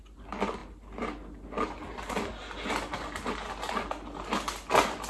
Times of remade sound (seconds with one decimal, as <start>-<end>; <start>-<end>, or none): none